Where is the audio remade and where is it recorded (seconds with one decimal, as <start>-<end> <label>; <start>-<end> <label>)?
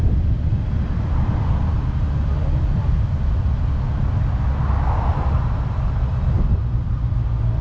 0.0-7.6 recorded